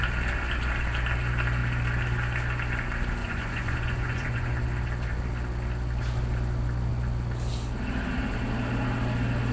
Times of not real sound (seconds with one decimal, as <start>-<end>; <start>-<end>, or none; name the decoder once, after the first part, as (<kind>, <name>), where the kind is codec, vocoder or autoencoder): 3.2-4.5 (vocoder, Vocos)